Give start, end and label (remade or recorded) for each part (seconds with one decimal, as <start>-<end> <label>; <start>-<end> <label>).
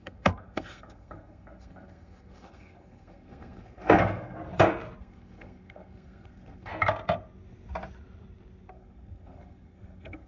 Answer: 0.0-4.4 remade; 4.4-5.0 recorded; 5.0-6.7 remade; 6.7-8.7 recorded; 8.7-10.3 remade